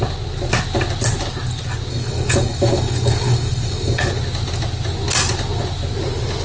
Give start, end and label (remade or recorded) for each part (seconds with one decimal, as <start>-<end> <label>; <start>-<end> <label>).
0.0-1.9 recorded; 1.9-4.1 remade; 4.1-6.4 recorded